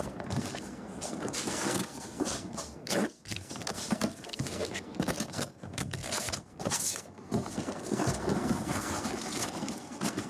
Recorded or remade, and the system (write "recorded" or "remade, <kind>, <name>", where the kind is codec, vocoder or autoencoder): remade, codec, SNAC